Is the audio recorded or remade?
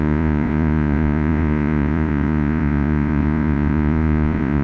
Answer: remade